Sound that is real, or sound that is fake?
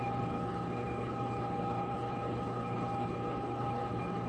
fake